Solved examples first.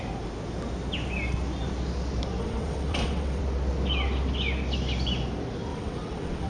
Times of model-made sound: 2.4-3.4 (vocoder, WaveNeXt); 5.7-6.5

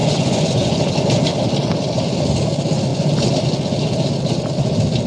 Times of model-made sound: 0.0-0.8 (vocoder, Vocos)

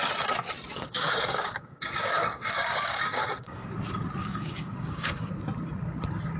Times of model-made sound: 0.7-3.7 (codec, DAC); 4.2-5.3

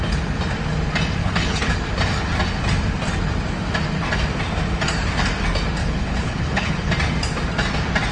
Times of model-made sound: 1.2-1.7 (codec, HILCodec); 5.8-6.9

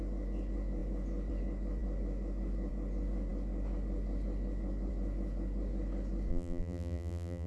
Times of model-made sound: 6.3-7.5 (vocoder, BigVGAN v2)